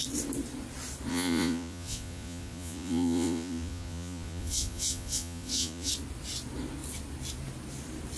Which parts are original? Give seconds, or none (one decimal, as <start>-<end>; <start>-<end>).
0.0-1.1; 5.9-8.2